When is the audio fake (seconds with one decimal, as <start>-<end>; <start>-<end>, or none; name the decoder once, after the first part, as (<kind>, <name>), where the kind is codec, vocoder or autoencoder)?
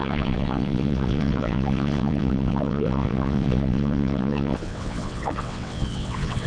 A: 0.0-6.5 (vocoder, WaveNeXt)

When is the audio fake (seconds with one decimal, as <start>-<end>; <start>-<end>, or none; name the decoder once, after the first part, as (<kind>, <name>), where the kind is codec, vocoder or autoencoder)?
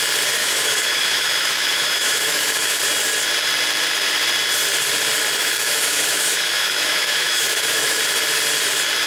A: 0.4-2.8 (autoencoder, DAC-VAE); 5.4-8.0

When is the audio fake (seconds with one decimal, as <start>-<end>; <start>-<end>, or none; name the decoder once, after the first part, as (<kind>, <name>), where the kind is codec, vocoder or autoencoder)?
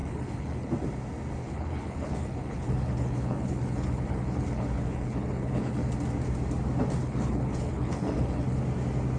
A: 0.0-0.7 (codec, HILCodec); 1.4-5.9; 7.0-8.6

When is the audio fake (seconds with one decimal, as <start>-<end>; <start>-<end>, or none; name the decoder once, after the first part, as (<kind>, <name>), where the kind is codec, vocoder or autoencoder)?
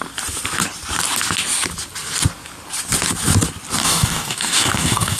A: 3.8-5.2 (codec, DAC)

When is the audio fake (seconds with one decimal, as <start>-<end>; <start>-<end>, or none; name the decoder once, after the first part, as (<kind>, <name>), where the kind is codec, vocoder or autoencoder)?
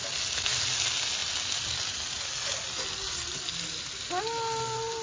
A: none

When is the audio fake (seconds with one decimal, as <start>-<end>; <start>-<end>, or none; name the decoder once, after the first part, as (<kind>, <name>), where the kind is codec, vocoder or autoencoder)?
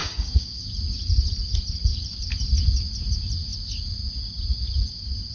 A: 0.0-0.6 (codec, DAC)